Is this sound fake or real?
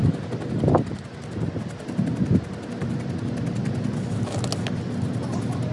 real